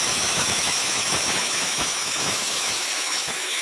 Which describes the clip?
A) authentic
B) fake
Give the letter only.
B